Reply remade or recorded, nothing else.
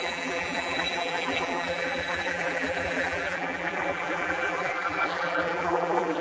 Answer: remade